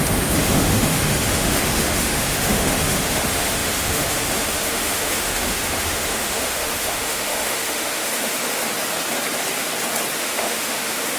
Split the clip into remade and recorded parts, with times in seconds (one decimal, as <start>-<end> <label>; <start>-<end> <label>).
0.0-8.6 remade; 8.6-10.2 recorded; 10.2-11.2 remade